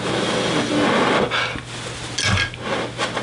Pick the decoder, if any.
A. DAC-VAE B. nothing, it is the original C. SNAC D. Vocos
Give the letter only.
B